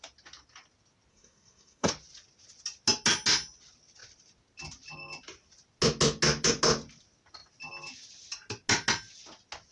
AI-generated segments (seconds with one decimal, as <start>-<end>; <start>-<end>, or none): 1.1-1.9